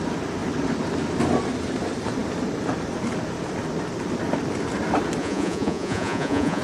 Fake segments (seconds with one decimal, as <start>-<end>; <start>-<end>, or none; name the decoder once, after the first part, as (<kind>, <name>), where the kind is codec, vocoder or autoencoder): 5.2-6.6 (vocoder, Vocos)